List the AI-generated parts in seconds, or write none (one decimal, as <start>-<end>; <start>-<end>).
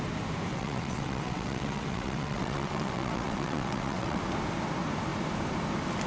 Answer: 0.5-4.2